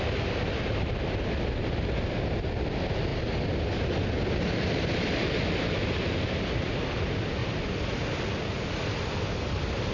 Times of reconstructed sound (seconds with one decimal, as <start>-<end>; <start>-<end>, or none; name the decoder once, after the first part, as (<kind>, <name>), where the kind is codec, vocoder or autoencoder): none

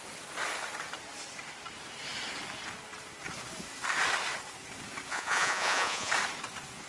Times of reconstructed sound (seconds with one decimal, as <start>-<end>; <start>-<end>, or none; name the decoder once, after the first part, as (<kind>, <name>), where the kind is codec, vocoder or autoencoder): 5.1-6.1 (vocoder, Vocos)

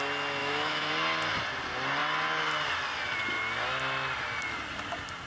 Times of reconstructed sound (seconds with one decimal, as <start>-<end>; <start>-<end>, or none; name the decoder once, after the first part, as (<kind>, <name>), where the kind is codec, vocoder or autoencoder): 0.4-0.9 (autoencoder, DAC-VAE)

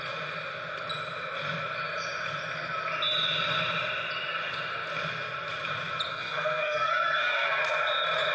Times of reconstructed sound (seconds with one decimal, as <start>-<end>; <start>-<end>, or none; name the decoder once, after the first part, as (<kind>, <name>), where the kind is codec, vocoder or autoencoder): 6.1-7.6 (codec, SNAC)

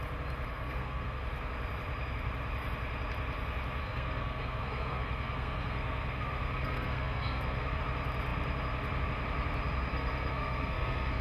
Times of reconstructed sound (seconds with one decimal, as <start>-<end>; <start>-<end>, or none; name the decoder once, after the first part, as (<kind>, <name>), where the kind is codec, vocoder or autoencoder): 0.5-1.2 (codec, SNAC); 3.8-7.8; 9.9-11.2

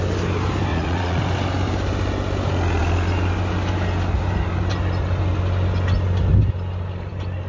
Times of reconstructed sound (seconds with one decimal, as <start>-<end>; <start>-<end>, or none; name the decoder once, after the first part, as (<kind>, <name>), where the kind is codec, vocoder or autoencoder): 0.7-1.2 (vocoder, Vocos)

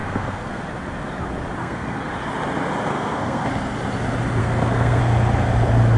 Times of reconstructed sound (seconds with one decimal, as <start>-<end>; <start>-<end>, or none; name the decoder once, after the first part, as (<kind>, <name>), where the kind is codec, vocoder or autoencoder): 0.0-0.6 (codec, SNAC); 1.6-2.1; 2.9-3.5; 4.4-5.0

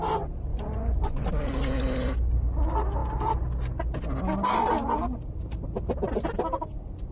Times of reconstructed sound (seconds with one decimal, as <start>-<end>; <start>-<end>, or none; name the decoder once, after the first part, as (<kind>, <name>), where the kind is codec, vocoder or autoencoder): 0.5-1.3 (vocoder, Vocos)